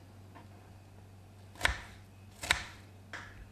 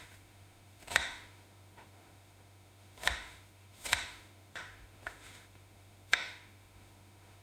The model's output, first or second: second